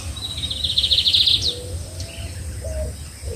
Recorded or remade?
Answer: recorded